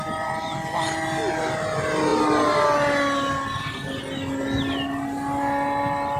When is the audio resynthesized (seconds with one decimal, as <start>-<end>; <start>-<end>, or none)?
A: none